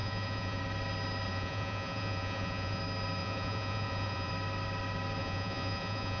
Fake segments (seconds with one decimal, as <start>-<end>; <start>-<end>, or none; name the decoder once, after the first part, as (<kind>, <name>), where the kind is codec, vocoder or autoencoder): 0.0-0.6 (vocoder, Vocos); 1.3-2.8; 3.2-4.3; 5.2-6.2